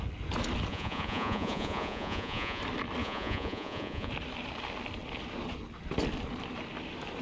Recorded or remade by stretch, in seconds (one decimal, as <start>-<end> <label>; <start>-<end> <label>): 0.0-0.7 recorded; 0.7-2.6 remade; 2.6-3.0 recorded; 3.0-4.1 remade; 4.1-7.2 recorded